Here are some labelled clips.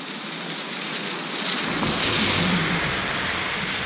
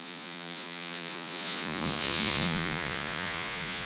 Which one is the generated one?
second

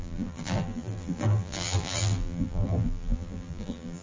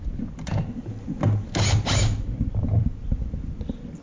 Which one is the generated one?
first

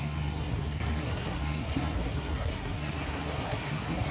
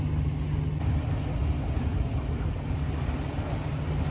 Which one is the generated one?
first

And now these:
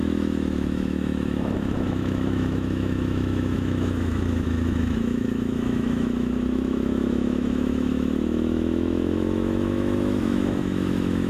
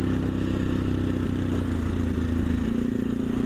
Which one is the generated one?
first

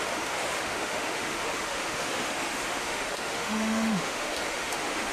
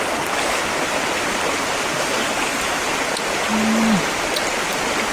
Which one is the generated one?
first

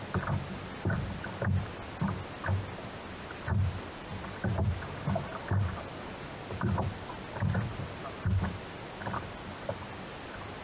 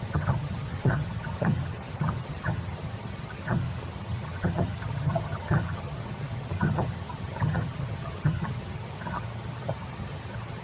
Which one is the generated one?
second